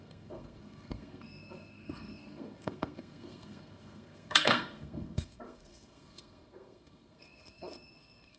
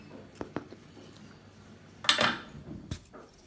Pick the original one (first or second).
second